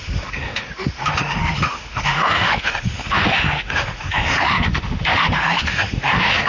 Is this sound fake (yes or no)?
yes